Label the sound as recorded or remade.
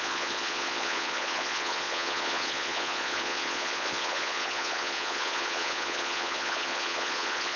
remade